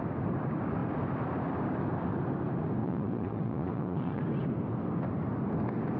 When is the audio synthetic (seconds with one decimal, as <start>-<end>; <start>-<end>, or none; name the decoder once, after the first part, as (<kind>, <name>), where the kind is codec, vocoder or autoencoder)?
2.8-4.2 (vocoder, Vocos)

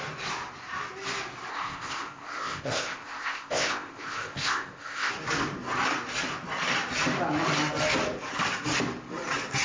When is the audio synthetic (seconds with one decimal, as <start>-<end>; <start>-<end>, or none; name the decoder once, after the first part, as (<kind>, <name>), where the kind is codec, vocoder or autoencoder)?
1.5-5.1 (codec, ZipCodec)